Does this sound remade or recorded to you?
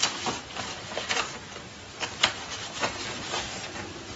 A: recorded